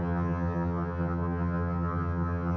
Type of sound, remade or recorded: remade